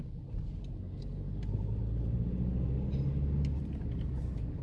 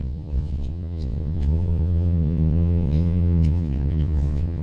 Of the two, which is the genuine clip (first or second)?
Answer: first